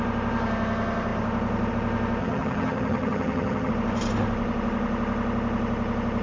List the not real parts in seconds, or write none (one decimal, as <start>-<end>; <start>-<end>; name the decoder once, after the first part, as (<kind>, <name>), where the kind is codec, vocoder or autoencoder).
2.2-3.7 (vocoder, HiFi-GAN)